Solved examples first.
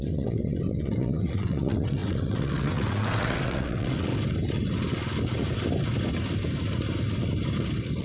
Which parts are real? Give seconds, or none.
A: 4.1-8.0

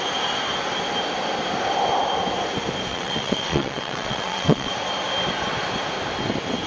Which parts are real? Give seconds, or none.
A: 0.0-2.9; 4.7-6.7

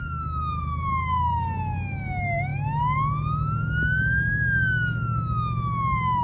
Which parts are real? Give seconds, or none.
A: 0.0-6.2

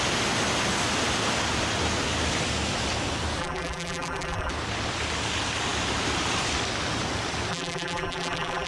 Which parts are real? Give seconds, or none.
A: 0.0-3.4; 4.5-7.5

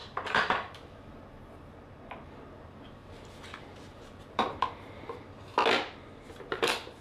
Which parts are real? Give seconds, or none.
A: 5.5-6.2